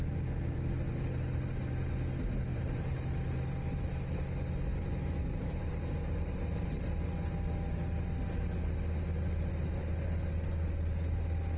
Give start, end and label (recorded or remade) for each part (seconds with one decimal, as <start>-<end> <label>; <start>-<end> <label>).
0.0-2.5 recorded; 2.5-3.0 remade; 3.0-4.7 recorded; 4.7-6.7 remade; 6.7-11.6 recorded